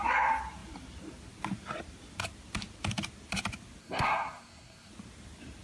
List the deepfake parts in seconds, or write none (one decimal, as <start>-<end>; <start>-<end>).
3.8-4.9